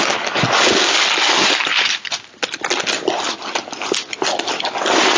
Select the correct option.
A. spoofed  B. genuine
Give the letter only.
B